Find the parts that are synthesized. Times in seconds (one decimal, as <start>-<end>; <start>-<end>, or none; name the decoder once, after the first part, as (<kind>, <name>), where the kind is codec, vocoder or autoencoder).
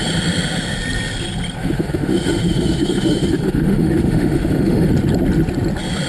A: 1.6-4.9 (autoencoder, DAC-VAE)